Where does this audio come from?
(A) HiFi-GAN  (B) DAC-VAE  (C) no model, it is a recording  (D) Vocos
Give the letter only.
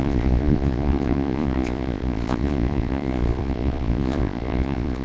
D